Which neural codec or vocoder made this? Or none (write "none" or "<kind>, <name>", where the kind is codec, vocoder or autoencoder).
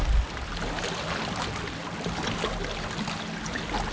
none